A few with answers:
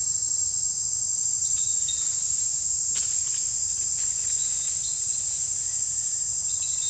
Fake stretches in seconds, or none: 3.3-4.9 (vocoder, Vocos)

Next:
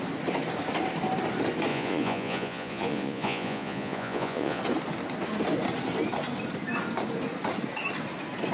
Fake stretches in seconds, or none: 1.7-4.6 (vocoder, Vocos)

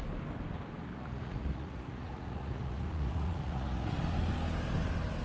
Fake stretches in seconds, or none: 0.9-4.0 (vocoder, Vocos)

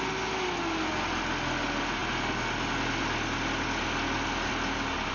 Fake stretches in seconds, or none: none